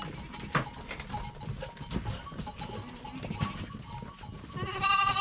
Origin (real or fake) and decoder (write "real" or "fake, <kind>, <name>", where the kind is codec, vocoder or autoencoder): real